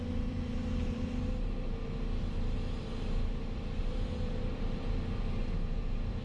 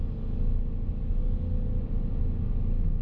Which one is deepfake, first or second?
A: first